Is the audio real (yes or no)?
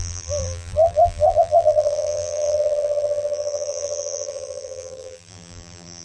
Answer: no